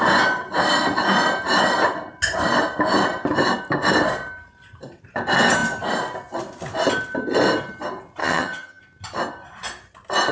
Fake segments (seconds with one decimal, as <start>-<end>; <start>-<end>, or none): 8.2-8.8